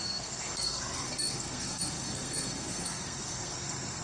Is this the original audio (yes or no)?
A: no